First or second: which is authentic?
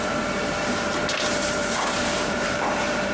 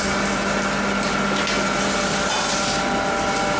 second